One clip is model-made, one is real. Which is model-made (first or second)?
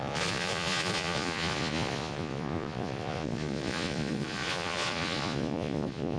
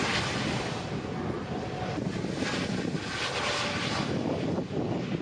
first